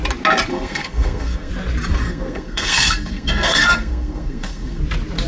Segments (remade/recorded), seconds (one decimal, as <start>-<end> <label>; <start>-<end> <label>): 0.0-0.5 recorded; 0.5-1.5 remade; 1.5-2.0 recorded; 2.0-4.8 remade; 4.8-5.3 recorded